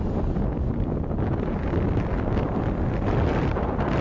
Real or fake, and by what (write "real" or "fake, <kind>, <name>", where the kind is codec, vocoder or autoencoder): real